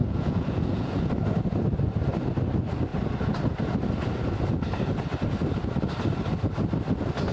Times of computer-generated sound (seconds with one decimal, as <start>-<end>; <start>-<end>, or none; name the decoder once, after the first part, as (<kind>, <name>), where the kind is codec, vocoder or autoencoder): 0.0-1.1 (vocoder, Vocos)